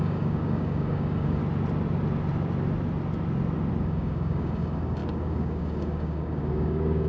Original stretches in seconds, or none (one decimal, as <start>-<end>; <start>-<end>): 1.4-3.8